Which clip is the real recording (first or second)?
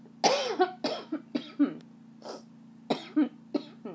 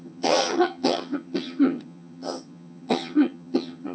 first